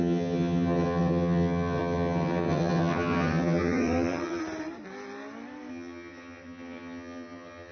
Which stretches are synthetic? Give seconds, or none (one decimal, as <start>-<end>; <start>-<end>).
0.0-4.4; 5.7-7.7